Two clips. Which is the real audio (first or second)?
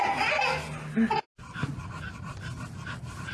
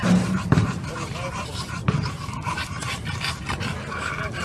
first